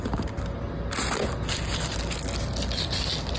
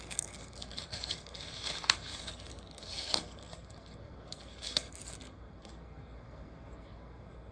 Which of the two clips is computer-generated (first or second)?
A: second